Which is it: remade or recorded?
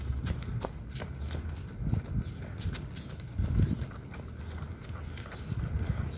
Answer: recorded